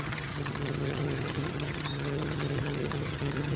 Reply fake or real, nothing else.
fake